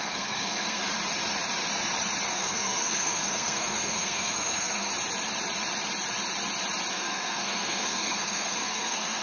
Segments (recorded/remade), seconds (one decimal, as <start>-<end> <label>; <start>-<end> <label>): 0.0-0.8 remade; 0.8-2.3 recorded; 2.3-4.9 remade; 4.9-6.9 recorded; 6.9-9.2 remade